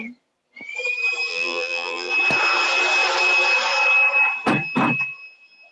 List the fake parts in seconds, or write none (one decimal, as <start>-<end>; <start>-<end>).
1.3-2.1